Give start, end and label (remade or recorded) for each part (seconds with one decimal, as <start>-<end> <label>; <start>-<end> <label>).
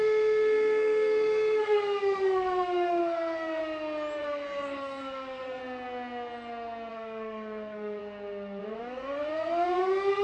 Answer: 0.0-3.6 remade; 3.6-4.2 recorded; 4.2-5.6 remade; 5.6-6.9 recorded; 6.9-8.0 remade; 8.0-8.6 recorded; 8.6-10.2 remade